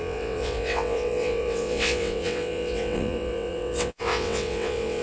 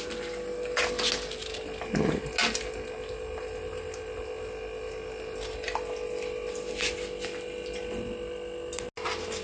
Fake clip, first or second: first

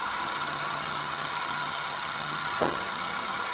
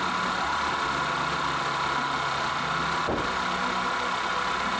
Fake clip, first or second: first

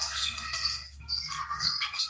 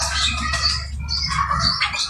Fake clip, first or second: first